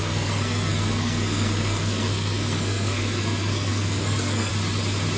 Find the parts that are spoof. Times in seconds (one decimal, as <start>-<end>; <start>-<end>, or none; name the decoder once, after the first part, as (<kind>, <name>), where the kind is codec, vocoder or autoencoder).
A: 0.0-4.5 (codec, SNAC)